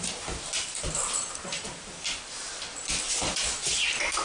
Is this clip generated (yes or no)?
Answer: yes